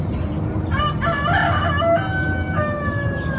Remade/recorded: recorded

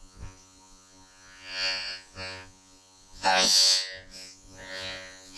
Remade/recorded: remade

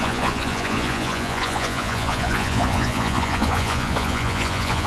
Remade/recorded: remade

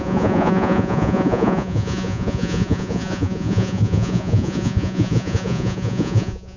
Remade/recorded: remade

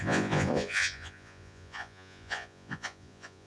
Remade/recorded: remade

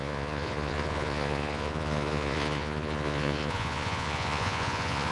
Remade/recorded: remade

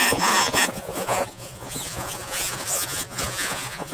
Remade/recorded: remade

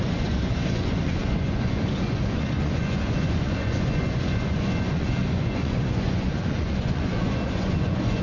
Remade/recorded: remade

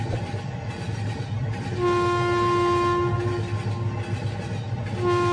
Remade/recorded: recorded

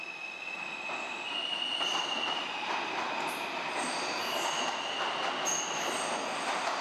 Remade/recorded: recorded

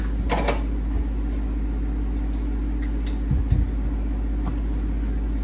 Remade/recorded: recorded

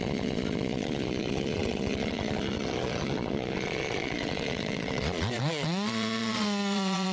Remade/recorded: remade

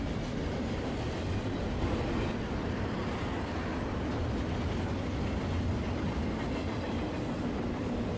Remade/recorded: recorded